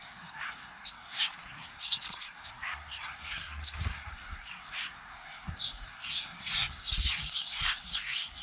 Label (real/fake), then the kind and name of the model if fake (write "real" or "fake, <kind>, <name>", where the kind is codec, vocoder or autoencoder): fake, codec, SNAC